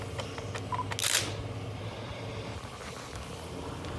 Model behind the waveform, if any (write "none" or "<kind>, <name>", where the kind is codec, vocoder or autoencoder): none